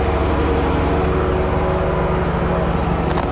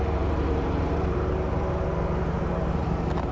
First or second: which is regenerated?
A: second